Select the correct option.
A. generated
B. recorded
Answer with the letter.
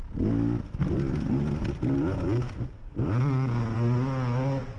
B